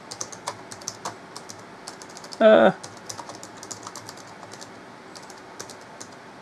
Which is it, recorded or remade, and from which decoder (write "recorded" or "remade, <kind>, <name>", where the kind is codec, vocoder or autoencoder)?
recorded